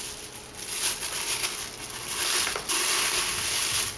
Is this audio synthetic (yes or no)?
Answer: no